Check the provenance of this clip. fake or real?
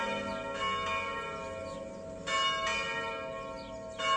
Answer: real